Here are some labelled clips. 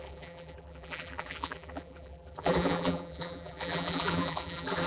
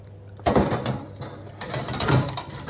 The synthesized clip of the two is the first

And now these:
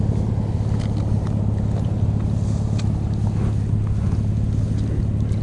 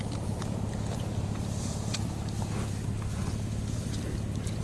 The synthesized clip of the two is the second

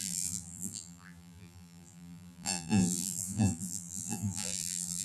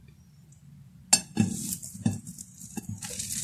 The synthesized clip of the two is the first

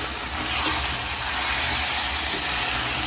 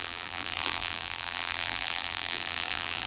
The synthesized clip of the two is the second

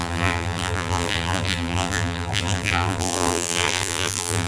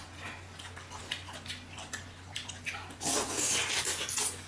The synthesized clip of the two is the first